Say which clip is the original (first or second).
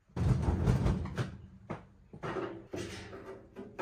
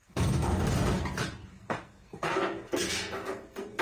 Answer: first